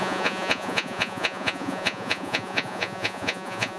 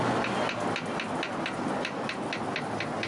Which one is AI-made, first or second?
first